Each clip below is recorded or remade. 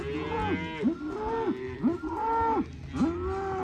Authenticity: recorded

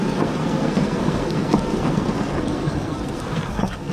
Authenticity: remade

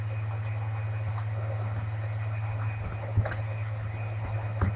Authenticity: recorded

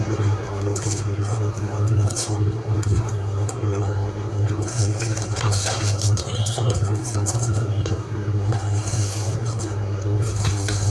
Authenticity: remade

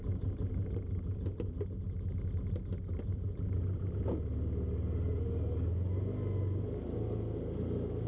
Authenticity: recorded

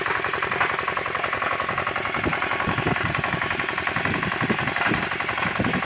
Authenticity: recorded